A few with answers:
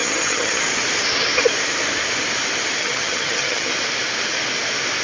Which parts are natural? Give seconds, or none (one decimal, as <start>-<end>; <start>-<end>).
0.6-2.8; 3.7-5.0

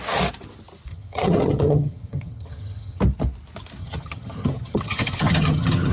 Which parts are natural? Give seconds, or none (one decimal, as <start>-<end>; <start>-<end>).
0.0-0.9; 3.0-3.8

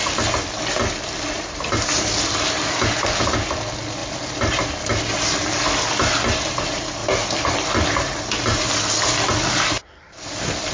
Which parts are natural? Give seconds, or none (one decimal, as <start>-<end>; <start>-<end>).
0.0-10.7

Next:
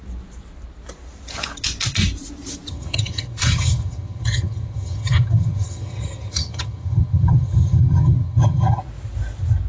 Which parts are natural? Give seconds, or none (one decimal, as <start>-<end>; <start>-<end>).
0.0-2.7; 8.8-9.7